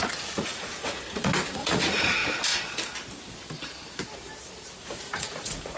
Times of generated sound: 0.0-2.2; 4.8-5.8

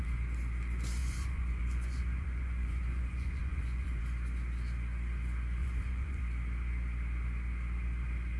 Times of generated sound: 1.0-4.0; 5.6-6.2

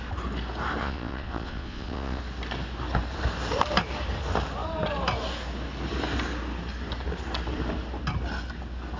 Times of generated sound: 0.8-2.2

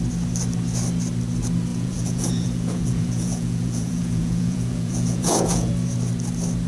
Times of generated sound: 1.7-5.7

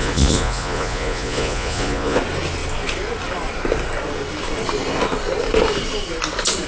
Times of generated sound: 0.0-2.2

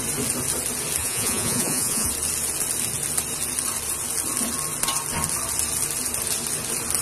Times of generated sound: 1.0-2.1

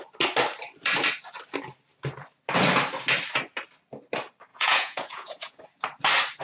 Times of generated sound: 4.5-5.6